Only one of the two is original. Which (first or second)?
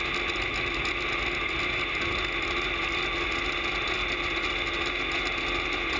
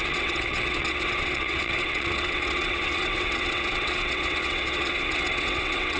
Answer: first